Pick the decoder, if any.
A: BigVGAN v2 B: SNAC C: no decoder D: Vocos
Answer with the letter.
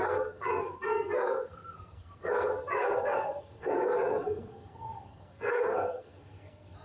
B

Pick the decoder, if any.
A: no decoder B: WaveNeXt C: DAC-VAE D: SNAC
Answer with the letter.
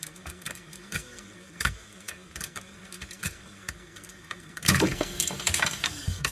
D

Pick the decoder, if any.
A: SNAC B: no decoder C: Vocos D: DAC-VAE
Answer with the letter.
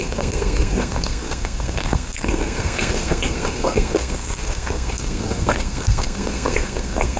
A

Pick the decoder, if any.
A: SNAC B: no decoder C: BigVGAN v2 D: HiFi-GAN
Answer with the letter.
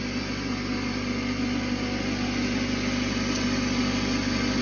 B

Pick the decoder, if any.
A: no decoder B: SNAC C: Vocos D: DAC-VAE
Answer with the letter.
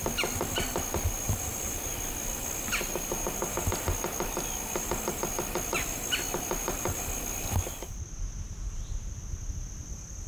A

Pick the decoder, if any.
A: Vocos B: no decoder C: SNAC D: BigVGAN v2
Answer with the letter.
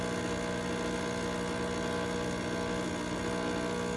B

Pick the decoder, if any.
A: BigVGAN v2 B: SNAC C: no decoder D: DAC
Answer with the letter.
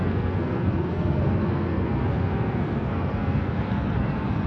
B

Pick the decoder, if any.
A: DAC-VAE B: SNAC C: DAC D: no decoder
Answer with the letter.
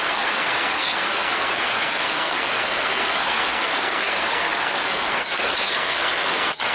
B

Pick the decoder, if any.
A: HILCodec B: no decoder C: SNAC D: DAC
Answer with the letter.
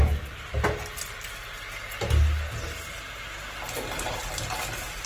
B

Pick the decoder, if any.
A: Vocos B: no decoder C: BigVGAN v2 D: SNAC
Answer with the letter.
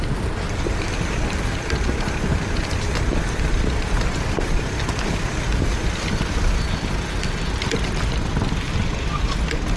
B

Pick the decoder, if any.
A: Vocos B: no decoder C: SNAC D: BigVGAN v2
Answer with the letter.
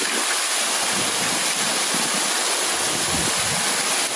B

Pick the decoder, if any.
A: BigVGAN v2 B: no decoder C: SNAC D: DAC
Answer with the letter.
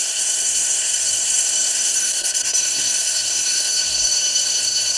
C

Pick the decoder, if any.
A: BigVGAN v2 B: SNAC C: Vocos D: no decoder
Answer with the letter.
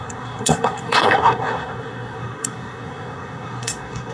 B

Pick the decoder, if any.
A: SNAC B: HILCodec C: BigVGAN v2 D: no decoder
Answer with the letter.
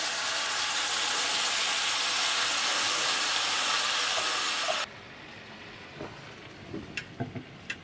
D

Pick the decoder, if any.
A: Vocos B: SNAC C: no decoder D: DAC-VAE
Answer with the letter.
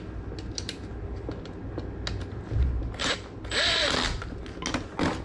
C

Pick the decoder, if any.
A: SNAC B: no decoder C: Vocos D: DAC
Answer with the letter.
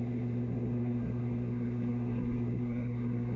A